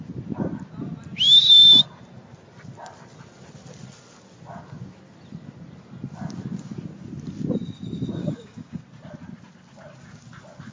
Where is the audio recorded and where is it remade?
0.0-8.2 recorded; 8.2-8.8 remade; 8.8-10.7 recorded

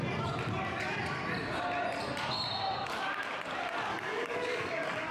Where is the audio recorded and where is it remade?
0.0-3.9 recorded; 3.9-5.1 remade